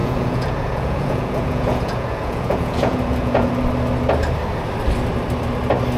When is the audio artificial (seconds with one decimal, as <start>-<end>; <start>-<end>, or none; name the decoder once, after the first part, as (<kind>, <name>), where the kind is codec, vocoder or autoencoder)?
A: 0.0-3.5 (vocoder, Vocos)